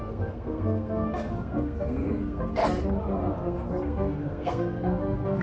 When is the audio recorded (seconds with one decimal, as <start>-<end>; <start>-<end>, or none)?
2.6-3.3